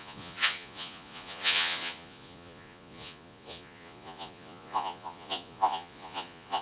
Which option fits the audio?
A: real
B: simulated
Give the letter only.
B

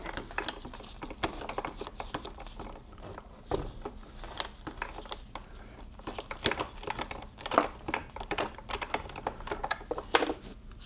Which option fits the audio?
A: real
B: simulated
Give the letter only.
A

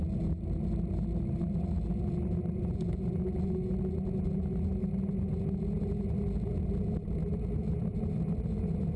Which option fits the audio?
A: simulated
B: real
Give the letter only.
B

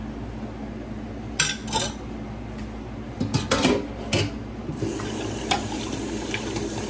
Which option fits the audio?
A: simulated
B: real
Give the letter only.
B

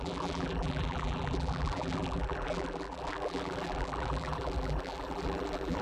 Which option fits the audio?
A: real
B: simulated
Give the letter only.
B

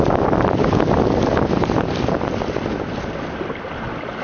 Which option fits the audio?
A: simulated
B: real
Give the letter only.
B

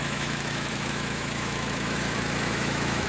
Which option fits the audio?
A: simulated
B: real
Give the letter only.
A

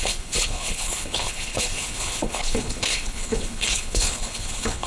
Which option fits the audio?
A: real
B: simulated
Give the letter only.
B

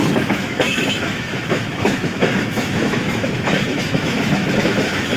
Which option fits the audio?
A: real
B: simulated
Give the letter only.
B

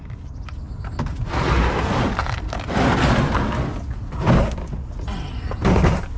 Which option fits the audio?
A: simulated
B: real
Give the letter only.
B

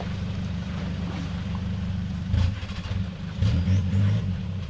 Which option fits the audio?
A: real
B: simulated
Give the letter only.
B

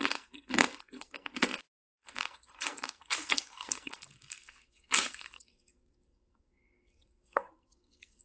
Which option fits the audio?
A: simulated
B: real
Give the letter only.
A